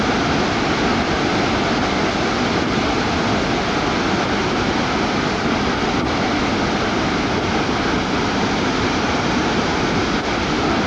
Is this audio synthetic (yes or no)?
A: no